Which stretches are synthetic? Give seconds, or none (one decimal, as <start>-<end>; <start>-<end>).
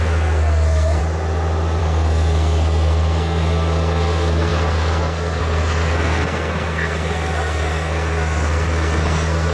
0.0-1.0; 1.8-9.5